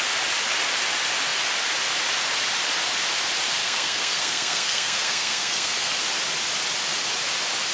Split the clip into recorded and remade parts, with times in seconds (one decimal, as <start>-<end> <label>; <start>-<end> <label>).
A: 0.0-3.6 recorded; 3.6-6.0 remade; 6.0-7.7 recorded

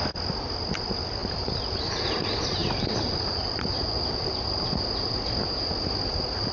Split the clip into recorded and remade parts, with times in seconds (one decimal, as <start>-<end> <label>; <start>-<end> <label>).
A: 0.0-6.5 recorded